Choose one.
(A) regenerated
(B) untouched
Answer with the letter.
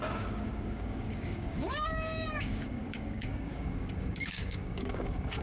A